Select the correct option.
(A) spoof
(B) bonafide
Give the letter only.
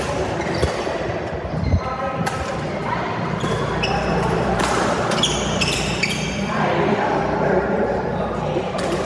A